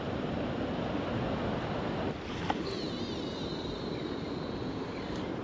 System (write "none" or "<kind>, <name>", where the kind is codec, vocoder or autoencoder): none